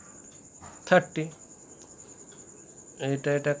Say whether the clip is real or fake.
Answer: real